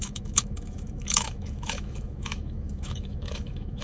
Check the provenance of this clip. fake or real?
fake